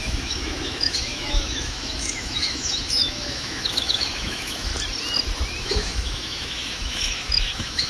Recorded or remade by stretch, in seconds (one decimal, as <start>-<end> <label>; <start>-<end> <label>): 0.0-4.7 remade; 4.7-5.6 recorded; 5.6-7.9 remade